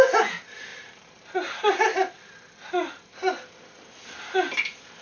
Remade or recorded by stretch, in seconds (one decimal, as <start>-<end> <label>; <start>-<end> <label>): 0.0-5.0 recorded